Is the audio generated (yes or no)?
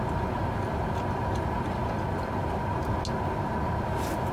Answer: no